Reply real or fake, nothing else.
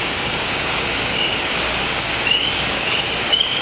fake